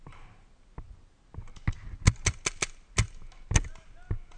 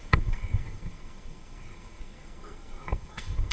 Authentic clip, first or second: first